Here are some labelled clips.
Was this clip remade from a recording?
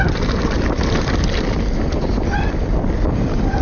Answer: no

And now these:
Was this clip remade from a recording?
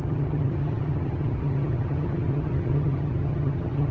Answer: yes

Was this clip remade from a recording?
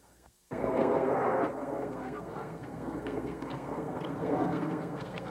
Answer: yes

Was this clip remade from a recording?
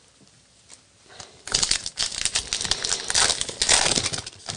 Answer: no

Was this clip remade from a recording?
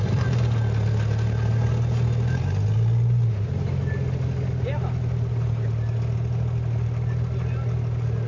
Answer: no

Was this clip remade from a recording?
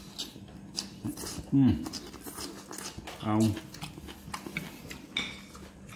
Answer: no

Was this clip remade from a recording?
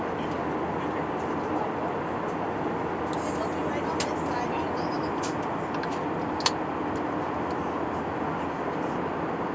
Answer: no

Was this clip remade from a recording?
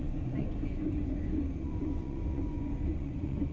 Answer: yes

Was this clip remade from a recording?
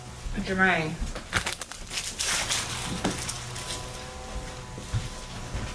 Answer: no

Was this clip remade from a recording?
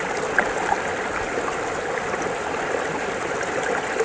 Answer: no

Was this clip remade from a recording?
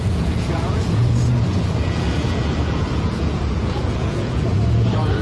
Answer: yes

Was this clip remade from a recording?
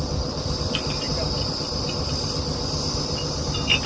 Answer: no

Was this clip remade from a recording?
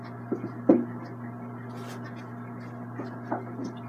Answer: no